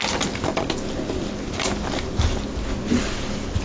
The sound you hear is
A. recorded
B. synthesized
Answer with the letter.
A